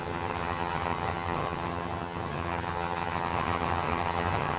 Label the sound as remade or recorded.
remade